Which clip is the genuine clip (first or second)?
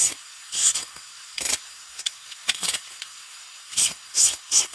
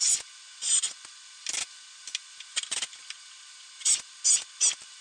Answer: second